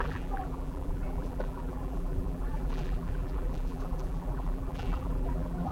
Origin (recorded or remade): remade